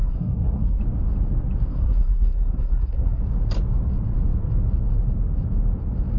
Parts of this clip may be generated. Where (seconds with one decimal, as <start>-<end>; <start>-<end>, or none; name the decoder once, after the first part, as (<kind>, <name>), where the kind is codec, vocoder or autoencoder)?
0.0-0.8 (codec, SNAC); 1.7-3.2